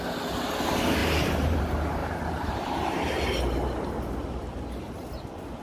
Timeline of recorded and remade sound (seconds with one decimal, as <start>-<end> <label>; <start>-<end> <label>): 0.0-1.0 recorded; 1.0-1.6 remade; 1.6-2.0 recorded; 2.0-4.4 remade; 4.4-5.6 recorded